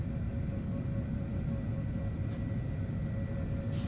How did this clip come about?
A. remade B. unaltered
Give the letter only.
A